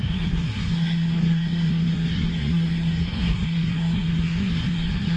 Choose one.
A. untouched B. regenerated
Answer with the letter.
B